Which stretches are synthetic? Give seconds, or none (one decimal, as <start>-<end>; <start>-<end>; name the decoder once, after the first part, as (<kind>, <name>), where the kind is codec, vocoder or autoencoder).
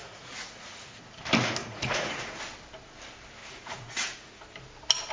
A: 0.0-1.0 (vocoder, Vocos); 1.6-2.4; 3.4-4.4